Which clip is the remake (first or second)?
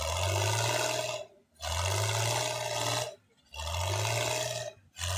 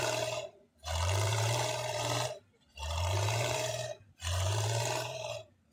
second